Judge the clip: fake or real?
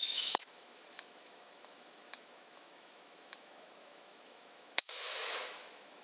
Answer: fake